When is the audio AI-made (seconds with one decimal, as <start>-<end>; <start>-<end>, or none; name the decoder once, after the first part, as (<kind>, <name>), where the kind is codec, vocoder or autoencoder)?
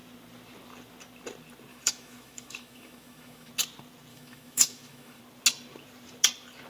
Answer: 1.7-3.5 (autoencoder, DAC-VAE); 4.1-5.2